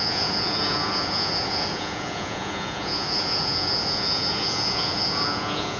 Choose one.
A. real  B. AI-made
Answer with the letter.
B